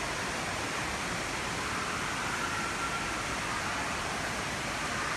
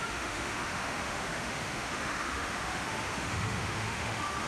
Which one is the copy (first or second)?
second